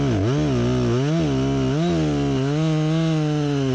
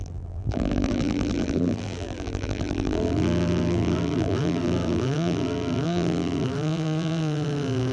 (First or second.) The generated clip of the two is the second